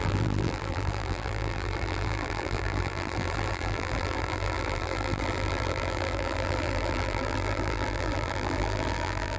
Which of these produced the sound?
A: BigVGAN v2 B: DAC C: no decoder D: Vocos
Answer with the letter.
A